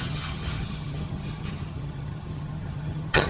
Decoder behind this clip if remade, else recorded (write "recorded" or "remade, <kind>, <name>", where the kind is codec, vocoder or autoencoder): remade, vocoder, HiFi-GAN